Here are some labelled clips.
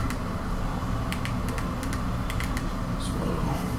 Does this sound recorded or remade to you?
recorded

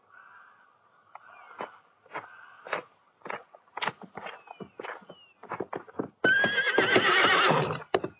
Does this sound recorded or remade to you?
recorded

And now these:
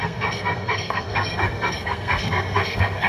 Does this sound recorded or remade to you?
remade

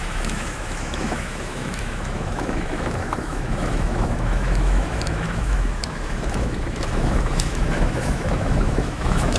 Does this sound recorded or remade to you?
remade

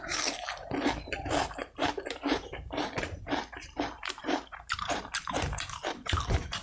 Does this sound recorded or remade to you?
remade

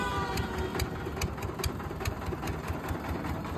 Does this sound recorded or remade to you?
recorded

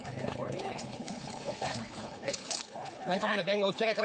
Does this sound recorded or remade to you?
remade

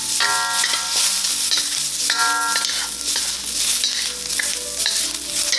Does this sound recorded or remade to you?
recorded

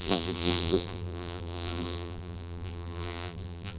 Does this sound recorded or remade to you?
remade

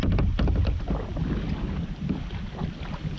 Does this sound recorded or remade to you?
recorded